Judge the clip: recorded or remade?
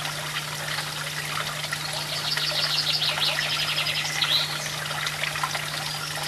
recorded